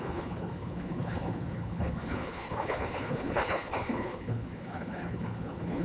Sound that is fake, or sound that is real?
fake